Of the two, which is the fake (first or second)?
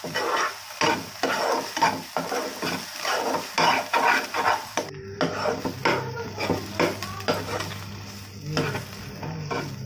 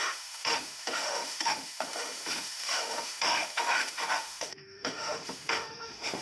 second